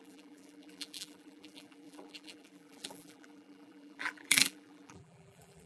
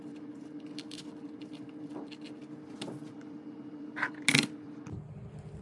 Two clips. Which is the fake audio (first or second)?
first